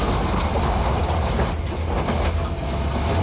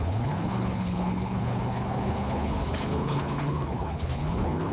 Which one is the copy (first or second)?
second